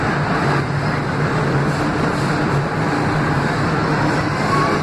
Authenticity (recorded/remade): recorded